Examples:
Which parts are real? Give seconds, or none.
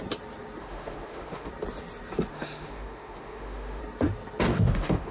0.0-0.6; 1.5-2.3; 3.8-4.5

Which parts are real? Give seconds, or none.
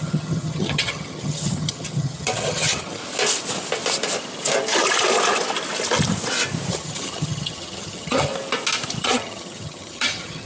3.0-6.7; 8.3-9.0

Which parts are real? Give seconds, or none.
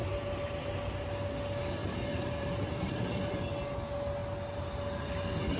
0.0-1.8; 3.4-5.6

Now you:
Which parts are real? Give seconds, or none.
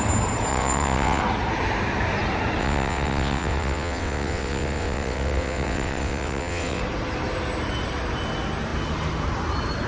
0.0-0.5; 1.2-2.6; 6.8-9.9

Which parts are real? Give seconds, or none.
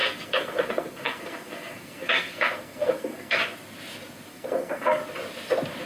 3.4-4.3; 5.0-5.9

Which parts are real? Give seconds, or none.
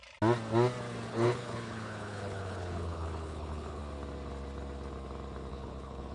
0.0-1.1; 3.8-5.5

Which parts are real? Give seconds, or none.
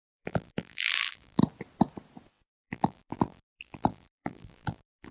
1.4-2.5